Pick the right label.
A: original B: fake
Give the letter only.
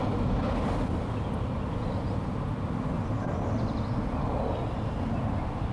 A